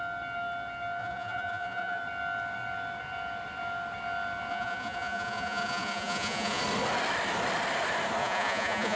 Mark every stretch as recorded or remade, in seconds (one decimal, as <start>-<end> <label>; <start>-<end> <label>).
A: 0.0-1.0 recorded; 1.0-2.0 remade; 2.0-4.5 recorded; 4.5-6.6 remade; 6.6-8.2 recorded; 8.2-9.0 remade